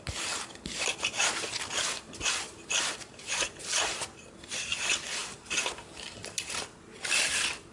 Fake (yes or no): no